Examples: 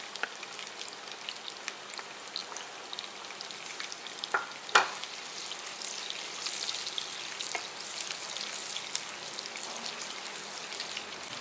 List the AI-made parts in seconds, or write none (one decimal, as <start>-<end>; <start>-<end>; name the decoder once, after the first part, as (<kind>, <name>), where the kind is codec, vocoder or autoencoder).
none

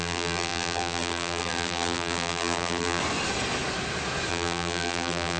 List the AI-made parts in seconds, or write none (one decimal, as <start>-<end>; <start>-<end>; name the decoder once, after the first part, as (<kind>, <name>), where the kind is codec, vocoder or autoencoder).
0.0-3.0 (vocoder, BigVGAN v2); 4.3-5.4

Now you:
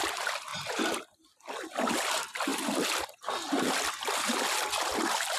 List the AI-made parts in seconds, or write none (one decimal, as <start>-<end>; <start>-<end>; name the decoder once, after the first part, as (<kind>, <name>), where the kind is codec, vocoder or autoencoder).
none

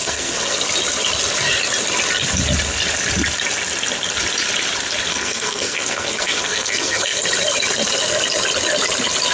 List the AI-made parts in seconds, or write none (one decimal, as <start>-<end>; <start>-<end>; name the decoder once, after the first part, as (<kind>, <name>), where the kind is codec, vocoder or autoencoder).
0.0-0.6 (codec, SNAC); 5.1-7.2

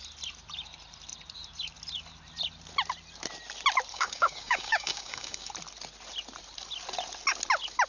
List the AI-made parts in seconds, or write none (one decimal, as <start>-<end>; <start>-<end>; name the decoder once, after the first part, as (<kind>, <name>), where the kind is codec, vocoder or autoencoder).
3.9-5.5 (codec, DAC)